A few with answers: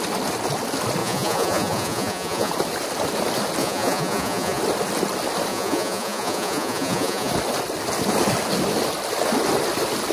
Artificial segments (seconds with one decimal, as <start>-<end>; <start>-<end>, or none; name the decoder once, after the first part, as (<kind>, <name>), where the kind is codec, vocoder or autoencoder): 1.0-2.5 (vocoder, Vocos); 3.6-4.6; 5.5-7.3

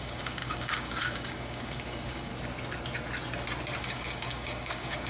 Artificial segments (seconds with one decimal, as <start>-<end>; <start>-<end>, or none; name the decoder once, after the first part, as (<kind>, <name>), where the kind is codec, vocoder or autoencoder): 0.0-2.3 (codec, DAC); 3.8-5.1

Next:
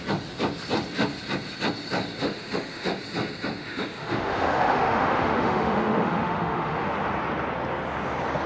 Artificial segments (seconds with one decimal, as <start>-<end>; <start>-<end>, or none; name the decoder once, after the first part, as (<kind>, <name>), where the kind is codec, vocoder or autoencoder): 2.2-3.0 (autoencoder, DAC-VAE); 3.6-6.9

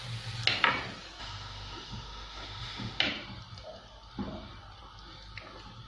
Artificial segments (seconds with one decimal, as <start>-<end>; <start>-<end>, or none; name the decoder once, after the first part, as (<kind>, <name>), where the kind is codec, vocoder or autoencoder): 1.2-3.0 (autoencoder, DAC-VAE)